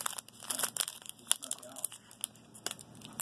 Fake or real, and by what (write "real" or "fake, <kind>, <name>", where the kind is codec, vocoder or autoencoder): real